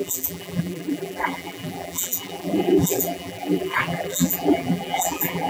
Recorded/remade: remade